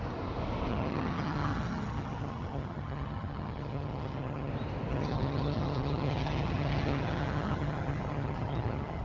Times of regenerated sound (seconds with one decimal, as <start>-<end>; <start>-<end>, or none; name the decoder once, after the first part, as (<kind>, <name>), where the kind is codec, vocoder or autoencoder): 0.7-4.5 (vocoder, HiFi-GAN); 4.9-9.0